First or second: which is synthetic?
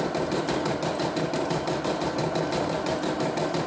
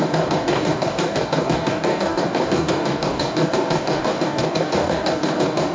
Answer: second